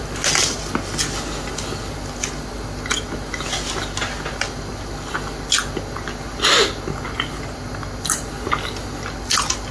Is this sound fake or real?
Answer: real